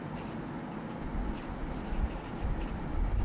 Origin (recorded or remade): recorded